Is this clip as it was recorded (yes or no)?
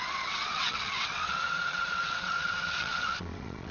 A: no